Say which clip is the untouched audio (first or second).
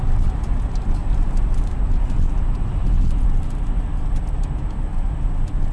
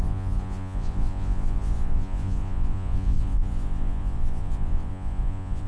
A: first